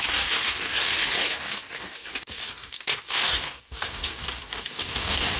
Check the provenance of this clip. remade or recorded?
remade